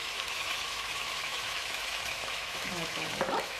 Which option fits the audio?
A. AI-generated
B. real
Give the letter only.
A